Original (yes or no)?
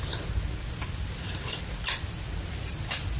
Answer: yes